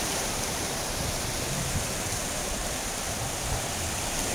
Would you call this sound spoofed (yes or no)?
yes